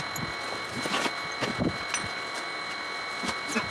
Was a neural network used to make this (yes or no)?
no